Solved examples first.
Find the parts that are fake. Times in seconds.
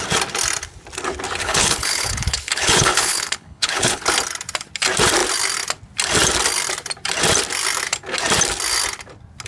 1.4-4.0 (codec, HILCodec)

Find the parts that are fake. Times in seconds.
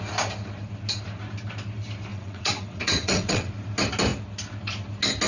2.1-3.5 (vocoder, WaveNeXt)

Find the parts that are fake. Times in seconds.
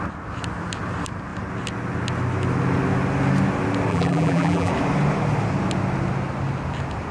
3.9-4.7 (vocoder, BigVGAN v2)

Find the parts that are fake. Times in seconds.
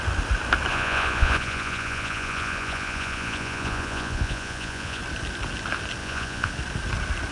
0.7-5.0 (vocoder, Vocos); 6.0-6.5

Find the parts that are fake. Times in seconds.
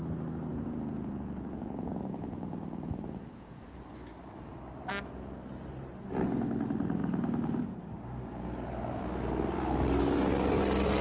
0.5-3.8 (vocoder, Vocos)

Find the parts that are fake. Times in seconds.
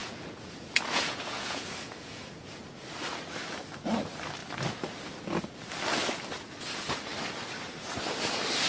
0.0-2.6 (vocoder, Vocos)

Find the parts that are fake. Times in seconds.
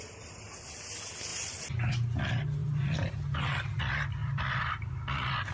1.3-1.9 (vocoder, BigVGAN v2); 2.6-3.8; 4.2-5.5